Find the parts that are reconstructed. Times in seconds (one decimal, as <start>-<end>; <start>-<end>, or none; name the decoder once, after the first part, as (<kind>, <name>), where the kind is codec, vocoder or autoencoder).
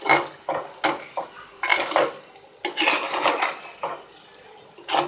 none